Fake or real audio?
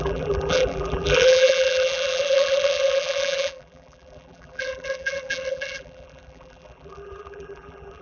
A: fake